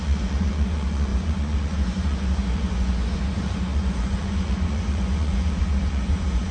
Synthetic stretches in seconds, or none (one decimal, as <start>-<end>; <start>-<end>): 0.0-6.5